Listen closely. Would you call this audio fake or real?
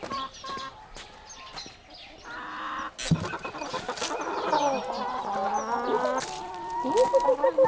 real